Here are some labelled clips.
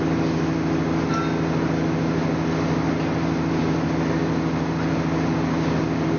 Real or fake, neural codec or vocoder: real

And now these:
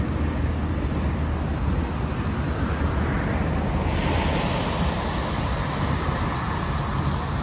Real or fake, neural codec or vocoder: real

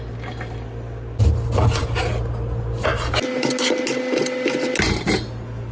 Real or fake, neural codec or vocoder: real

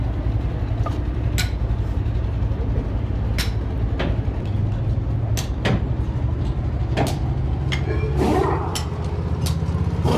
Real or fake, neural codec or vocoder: real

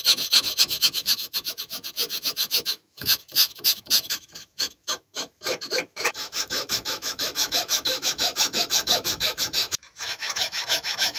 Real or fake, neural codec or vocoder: fake, autoencoder, DAC-VAE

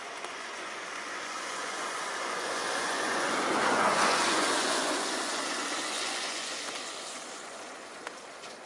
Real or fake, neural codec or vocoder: fake, vocoder, Vocos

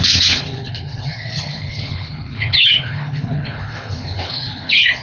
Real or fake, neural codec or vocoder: fake, codec, HILCodec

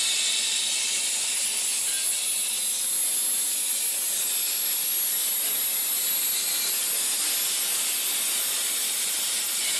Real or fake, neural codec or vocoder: real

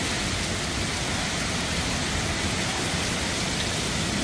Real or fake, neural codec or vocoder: fake, vocoder, BigVGAN v2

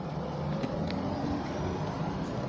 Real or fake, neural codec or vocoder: real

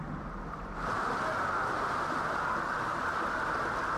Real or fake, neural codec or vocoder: real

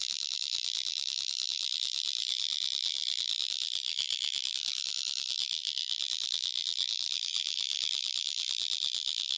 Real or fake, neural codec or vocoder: fake, vocoder, BigVGAN v2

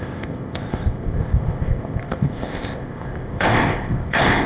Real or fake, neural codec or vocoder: fake, codec, ZipCodec